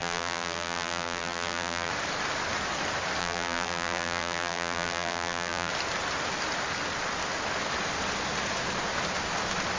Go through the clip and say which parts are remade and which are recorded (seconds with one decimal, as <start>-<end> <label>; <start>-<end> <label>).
0.0-1.9 remade; 1.9-3.2 recorded; 3.2-5.7 remade; 5.7-9.8 recorded